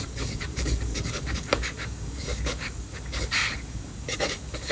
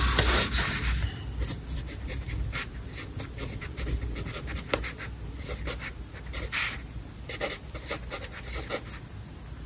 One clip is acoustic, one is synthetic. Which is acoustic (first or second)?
second